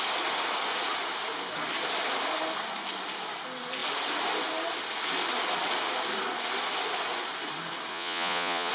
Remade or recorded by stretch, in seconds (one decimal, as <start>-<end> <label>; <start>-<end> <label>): 0.0-7.9 recorded; 7.9-8.7 remade